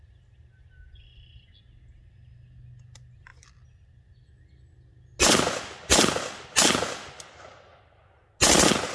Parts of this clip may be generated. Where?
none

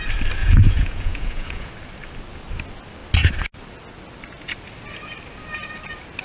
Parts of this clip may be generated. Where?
0.4-1.7 (vocoder, Vocos)

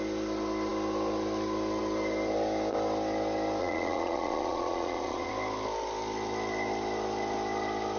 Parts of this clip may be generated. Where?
3.6-5.3 (vocoder, Vocos)

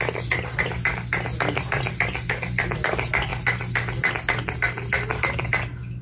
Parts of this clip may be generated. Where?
none